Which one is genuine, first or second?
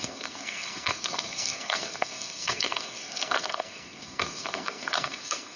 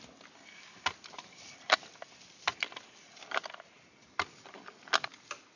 second